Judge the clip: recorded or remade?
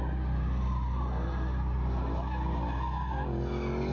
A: recorded